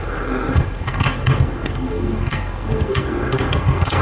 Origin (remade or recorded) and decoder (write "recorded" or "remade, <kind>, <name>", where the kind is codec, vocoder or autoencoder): remade, codec, SNAC